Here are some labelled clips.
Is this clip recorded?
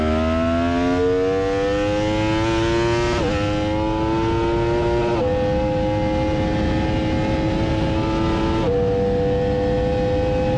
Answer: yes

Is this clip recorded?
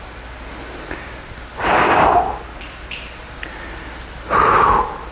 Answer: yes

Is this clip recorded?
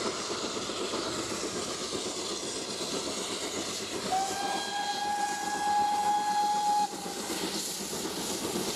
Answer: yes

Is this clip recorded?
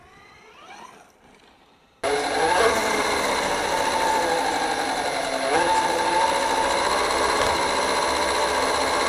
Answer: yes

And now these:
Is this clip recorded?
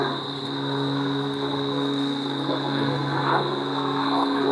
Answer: no